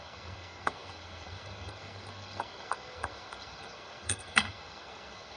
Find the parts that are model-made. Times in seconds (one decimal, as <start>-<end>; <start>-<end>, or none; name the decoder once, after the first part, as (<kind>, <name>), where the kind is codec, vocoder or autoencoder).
0.0-5.4 (codec, SNAC)